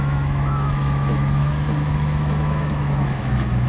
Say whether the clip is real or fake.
fake